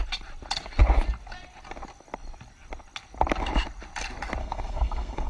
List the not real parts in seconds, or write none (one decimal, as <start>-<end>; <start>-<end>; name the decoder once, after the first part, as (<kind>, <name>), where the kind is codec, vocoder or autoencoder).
4.4-5.3 (codec, SNAC)

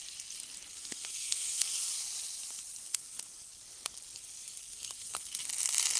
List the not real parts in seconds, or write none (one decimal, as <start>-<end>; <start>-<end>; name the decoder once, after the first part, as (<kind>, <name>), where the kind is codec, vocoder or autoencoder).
0.7-1.9 (codec, SNAC); 2.9-3.5; 4.6-5.4

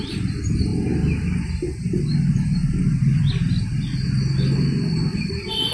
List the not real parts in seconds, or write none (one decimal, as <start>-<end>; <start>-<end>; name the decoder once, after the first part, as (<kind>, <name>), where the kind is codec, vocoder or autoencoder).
none

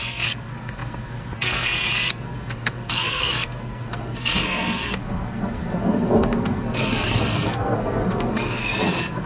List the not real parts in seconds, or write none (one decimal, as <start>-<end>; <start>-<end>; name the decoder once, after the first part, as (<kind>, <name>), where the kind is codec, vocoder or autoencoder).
0.0-9.3 (codec, SNAC)